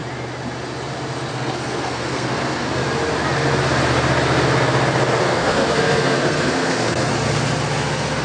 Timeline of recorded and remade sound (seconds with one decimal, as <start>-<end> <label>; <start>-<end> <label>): 0.0-1.3 recorded; 1.3-2.8 remade; 2.8-5.2 recorded; 5.2-7.1 remade; 7.1-8.2 recorded